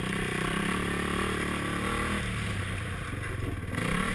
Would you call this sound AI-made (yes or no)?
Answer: no